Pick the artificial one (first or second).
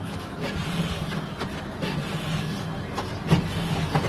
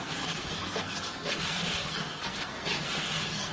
second